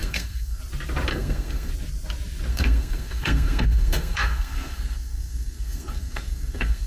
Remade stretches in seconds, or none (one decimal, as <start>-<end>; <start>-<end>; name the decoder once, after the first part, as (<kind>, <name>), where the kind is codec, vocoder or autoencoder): 0.0-0.6 (codec, SNAC); 1.1-1.7; 2.5-6.9